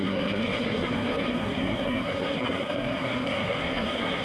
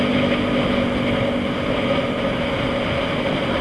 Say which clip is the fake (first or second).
first